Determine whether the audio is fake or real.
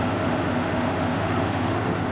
fake